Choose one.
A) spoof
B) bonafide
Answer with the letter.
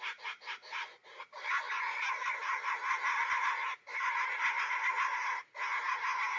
B